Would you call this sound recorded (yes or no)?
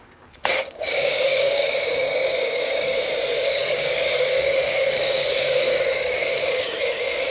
no